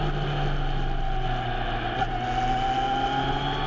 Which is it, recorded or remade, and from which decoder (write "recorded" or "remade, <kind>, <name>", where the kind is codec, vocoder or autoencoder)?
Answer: recorded